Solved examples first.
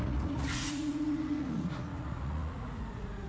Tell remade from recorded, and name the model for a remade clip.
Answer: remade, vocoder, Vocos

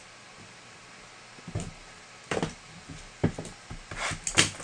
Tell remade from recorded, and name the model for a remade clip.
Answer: recorded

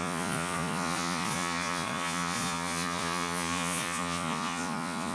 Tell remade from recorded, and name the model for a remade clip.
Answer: remade, vocoder, Vocos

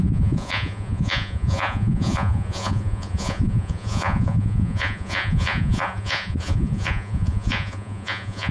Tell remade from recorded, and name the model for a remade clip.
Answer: remade, vocoder, Vocos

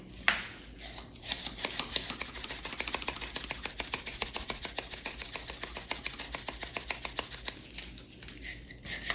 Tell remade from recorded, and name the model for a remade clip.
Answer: recorded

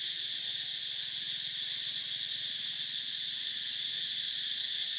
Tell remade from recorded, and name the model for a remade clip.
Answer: recorded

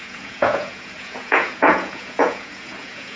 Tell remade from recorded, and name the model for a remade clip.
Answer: remade, vocoder, Vocos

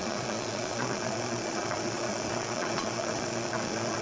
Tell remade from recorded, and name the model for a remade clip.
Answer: remade, vocoder, Vocos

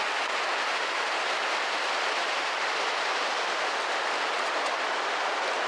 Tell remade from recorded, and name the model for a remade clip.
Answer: recorded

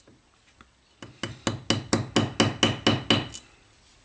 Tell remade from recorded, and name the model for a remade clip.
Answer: recorded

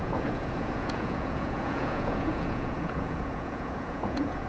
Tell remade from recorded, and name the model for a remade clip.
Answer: remade, vocoder, Vocos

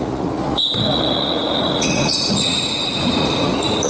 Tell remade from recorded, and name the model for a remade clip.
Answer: remade, vocoder, Vocos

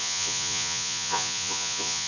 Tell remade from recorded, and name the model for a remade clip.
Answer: remade, vocoder, Vocos